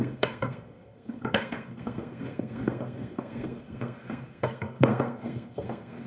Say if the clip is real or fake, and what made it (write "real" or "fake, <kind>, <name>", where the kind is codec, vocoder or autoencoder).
fake, codec, SNAC